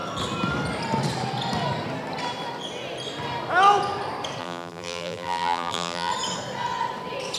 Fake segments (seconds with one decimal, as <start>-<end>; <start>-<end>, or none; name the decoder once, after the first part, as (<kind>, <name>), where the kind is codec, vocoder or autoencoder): 4.4-6.1 (vocoder, BigVGAN v2)